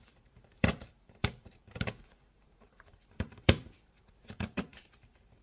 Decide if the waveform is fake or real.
fake